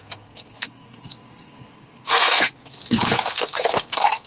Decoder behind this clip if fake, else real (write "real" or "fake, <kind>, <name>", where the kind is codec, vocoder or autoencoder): fake, codec, SNAC